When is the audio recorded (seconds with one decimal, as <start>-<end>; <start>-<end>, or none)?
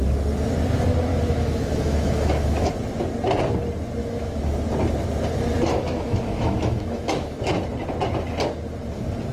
0.0-1.1; 2.7-4.0; 4.5-5.7; 7.5-9.3